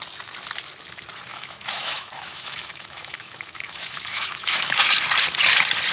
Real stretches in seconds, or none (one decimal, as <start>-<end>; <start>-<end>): 0.0-1.3; 4.8-5.9